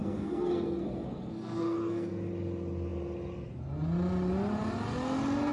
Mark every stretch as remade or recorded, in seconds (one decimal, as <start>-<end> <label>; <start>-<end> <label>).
0.0-2.1 remade; 2.1-5.5 recorded